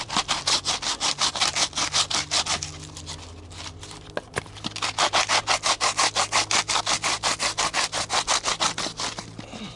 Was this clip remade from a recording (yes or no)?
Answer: no